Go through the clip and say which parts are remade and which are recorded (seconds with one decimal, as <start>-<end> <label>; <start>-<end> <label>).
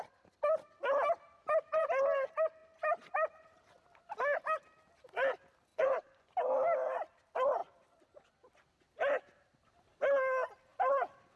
0.0-5.7 recorded; 5.7-6.3 remade; 6.3-11.4 recorded